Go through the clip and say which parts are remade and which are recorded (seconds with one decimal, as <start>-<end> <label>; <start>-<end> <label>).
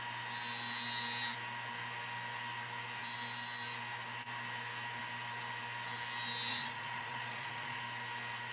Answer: 0.0-6.5 recorded; 6.5-7.8 remade; 7.8-8.5 recorded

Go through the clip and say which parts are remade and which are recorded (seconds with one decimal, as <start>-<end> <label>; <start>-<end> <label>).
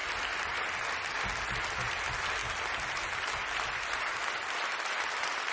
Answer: 0.0-5.5 recorded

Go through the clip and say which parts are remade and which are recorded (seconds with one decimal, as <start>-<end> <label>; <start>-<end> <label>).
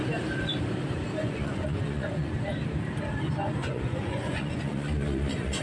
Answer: 0.0-1.2 recorded; 1.2-2.3 remade; 2.3-3.6 recorded; 3.6-5.6 remade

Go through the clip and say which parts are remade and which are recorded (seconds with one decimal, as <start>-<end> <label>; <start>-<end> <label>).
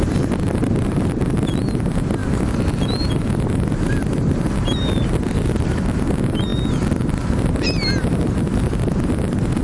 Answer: 0.0-9.6 recorded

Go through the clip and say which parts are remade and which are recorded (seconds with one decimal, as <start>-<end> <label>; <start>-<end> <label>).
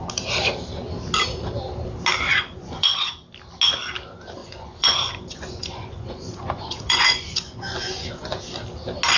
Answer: 0.0-2.3 recorded; 2.3-3.1 remade; 3.1-4.4 recorded; 4.4-8.4 remade; 8.4-9.2 recorded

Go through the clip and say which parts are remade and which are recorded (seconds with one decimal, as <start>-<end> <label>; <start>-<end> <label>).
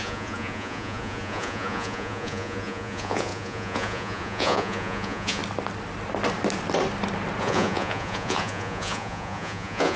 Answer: 0.0-5.4 remade; 5.4-7.4 recorded; 7.4-10.0 remade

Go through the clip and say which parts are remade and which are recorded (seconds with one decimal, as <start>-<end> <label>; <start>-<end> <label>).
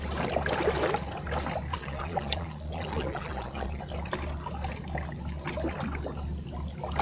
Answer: 0.0-1.7 recorded; 1.7-3.8 remade; 3.8-7.0 recorded